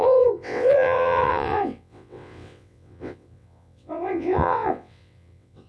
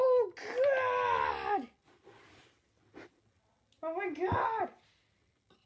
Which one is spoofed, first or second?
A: first